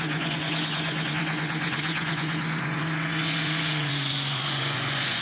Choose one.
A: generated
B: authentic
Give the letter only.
A